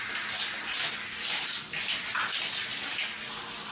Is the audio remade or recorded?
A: recorded